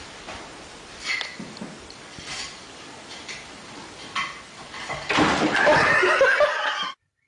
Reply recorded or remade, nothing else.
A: recorded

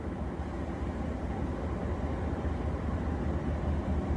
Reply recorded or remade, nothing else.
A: recorded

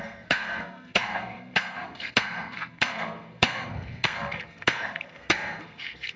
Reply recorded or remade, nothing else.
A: remade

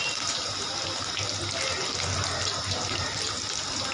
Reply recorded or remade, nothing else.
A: recorded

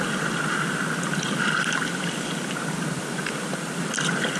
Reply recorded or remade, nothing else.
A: recorded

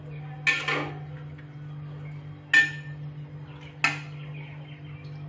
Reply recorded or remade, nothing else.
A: recorded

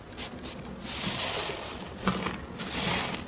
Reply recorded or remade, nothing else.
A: recorded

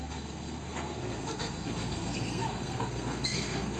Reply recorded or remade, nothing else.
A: remade